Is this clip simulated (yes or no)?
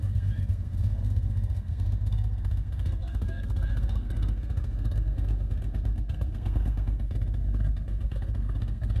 yes